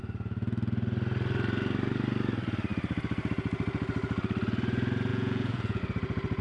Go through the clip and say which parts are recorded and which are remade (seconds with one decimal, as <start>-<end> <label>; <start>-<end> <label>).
0.0-5.1 recorded; 5.1-5.8 remade; 5.8-6.4 recorded